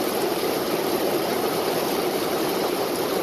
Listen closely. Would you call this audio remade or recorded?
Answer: remade